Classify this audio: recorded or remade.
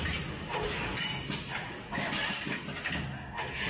recorded